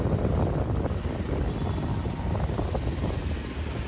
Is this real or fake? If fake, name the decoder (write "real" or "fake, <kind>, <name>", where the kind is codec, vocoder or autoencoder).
real